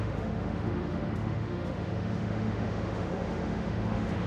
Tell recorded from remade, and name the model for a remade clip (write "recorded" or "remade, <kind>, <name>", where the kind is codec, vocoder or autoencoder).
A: remade, autoencoder, DAC-VAE